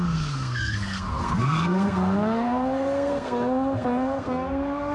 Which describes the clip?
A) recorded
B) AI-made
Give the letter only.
B